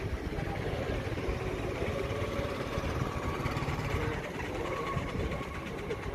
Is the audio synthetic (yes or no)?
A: yes